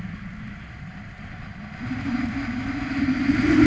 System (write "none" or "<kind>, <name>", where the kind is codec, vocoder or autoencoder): none